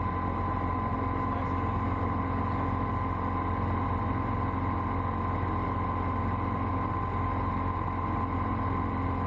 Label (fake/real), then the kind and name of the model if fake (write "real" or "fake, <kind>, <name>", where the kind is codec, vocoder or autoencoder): real